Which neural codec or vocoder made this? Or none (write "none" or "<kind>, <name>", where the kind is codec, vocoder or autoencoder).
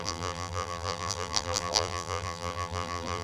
vocoder, BigVGAN v2